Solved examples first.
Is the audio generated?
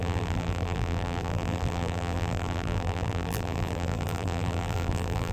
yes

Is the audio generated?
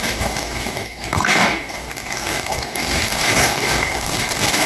yes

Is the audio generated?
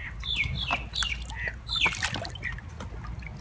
no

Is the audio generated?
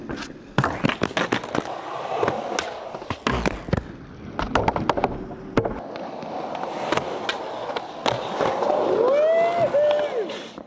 no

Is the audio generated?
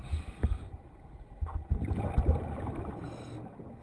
no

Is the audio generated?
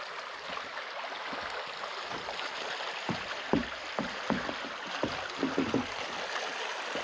no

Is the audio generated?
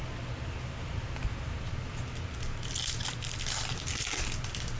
no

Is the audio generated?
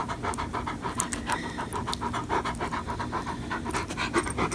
no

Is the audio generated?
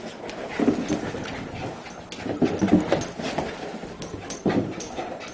no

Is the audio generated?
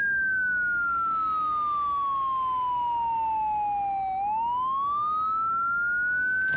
no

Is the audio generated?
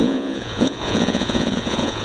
yes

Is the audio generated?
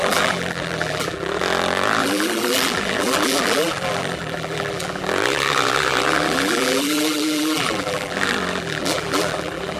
yes